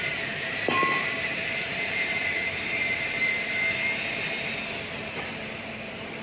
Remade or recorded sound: remade